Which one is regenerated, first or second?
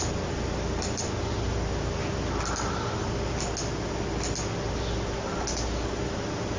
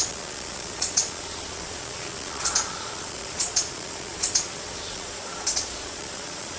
second